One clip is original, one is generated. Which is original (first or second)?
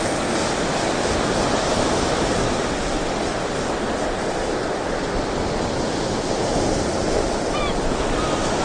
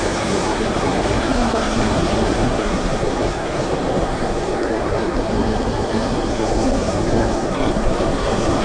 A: first